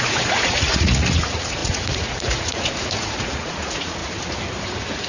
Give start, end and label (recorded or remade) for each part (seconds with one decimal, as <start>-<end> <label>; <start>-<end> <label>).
0.0-4.0 remade; 4.0-5.1 recorded